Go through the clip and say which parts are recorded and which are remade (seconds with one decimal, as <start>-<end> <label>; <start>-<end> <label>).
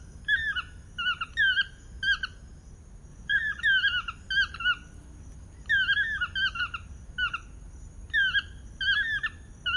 0.0-3.1 recorded; 3.1-3.6 remade; 3.6-9.8 recorded